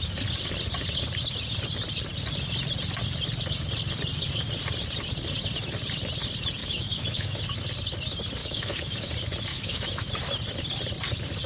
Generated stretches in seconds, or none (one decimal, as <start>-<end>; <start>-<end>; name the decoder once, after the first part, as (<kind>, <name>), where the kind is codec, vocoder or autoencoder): 6.6-7.4 (autoencoder, DAC-VAE); 8.4-9.1; 9.5-10.1